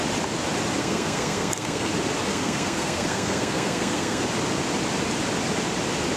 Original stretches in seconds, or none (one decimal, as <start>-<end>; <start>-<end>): 0.0-0.8; 1.9-2.3; 4.2-6.2